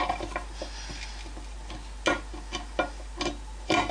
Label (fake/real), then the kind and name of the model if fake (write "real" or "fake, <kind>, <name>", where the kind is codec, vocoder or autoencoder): real